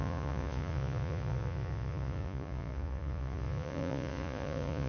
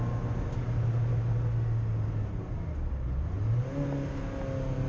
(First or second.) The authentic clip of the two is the second